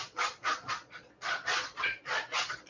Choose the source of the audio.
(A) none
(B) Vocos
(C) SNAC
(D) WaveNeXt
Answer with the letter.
B